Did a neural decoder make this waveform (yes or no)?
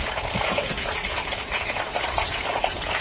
yes